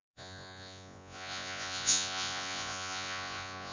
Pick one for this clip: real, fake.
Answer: fake